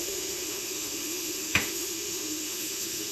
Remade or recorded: remade